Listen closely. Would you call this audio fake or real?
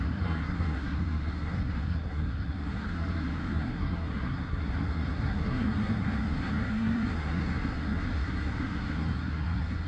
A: fake